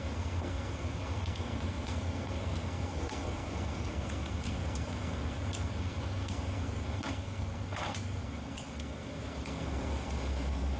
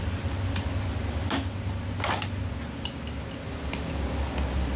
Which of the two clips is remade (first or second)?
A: first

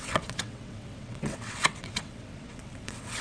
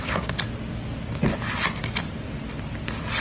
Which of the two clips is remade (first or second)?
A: first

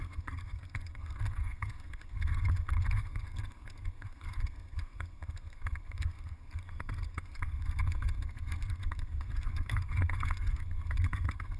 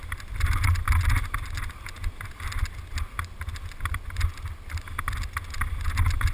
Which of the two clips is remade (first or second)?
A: first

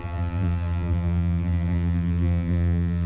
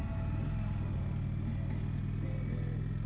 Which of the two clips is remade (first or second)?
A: first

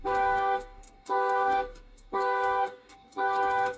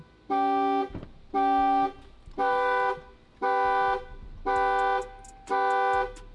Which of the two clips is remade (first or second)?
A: first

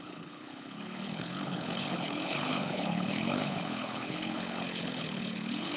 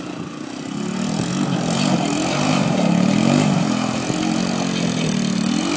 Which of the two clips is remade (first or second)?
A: first